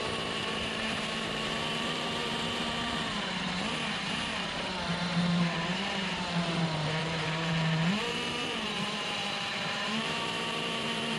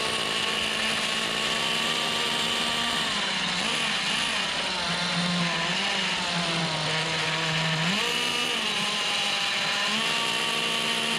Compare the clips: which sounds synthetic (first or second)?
first